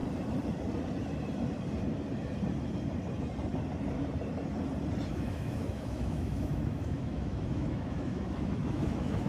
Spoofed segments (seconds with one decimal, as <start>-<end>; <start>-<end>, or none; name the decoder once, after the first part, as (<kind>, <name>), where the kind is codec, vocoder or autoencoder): 5.1-9.3 (autoencoder, DAC-VAE)